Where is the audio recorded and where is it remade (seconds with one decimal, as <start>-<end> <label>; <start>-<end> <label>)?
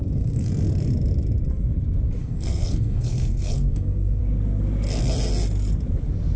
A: 0.0-0.5 remade; 0.5-2.2 recorded; 2.2-4.2 remade; 4.2-6.4 recorded